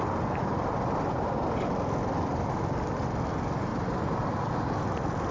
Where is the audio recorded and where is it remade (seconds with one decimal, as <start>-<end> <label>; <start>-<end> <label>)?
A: 0.0-3.7 recorded; 3.7-4.5 remade; 4.5-5.3 recorded

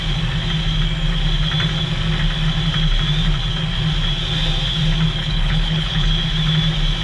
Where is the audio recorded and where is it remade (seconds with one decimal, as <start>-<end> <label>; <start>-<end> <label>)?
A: 0.0-5.2 recorded; 5.2-6.1 remade; 6.1-7.0 recorded

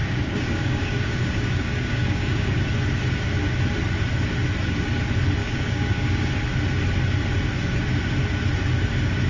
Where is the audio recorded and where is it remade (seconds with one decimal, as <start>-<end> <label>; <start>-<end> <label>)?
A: 0.0-2.6 remade; 2.6-5.4 recorded; 5.4-6.3 remade; 6.3-9.3 recorded

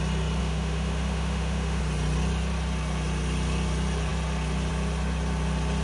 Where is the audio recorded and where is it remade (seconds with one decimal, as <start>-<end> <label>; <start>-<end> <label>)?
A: 0.0-0.4 recorded; 0.4-1.8 remade; 1.8-5.8 recorded

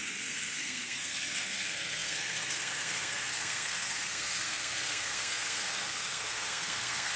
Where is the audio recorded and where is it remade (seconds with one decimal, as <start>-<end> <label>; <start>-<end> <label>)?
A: 0.0-7.2 remade

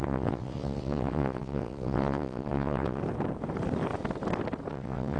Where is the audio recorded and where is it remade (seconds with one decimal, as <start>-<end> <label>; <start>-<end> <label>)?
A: 0.0-3.0 remade; 3.0-4.7 recorded; 4.7-5.2 remade

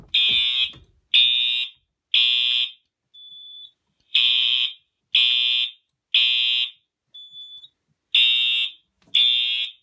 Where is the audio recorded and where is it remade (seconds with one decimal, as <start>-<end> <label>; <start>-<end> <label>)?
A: 0.0-3.3 recorded; 3.3-5.0 remade; 5.0-9.8 recorded

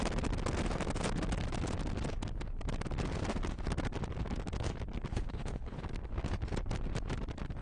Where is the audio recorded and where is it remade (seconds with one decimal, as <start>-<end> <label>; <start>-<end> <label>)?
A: 0.0-5.1 recorded; 5.1-5.8 remade; 5.8-7.6 recorded